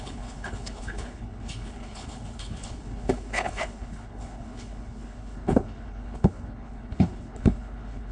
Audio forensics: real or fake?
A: fake